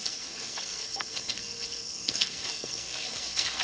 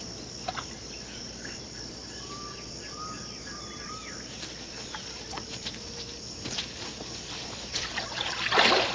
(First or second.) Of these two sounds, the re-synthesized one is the first